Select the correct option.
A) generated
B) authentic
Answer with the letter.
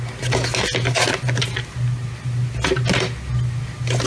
B